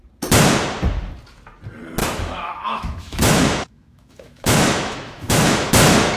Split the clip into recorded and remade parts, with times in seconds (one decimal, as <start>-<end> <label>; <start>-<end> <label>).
0.0-2.0 recorded; 2.0-5.7 remade; 5.7-6.2 recorded